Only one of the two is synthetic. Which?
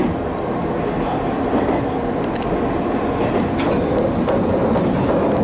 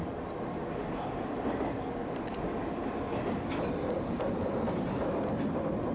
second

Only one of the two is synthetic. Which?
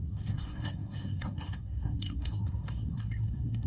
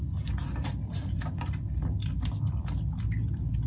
first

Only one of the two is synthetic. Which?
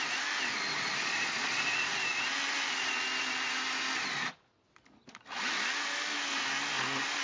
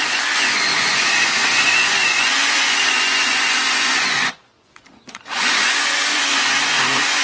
second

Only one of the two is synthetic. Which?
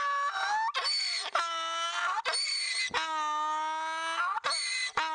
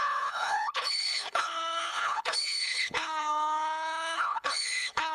second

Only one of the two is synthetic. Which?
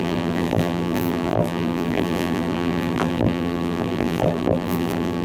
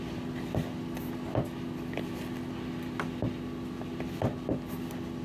first